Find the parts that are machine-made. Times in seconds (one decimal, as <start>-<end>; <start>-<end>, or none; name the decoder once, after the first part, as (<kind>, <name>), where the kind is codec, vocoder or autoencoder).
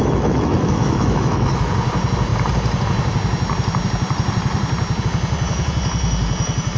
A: 0.0-1.7 (autoencoder, DAC-VAE)